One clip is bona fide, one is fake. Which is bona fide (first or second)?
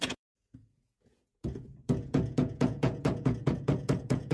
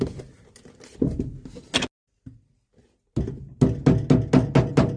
second